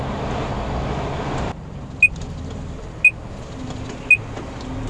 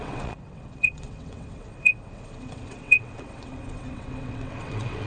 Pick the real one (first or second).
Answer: first